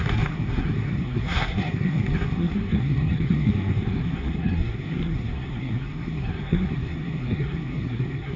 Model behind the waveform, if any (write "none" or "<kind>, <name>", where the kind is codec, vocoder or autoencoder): codec, SNAC